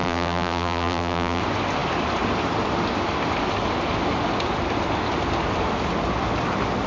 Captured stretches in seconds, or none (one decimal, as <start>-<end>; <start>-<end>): 1.4-6.9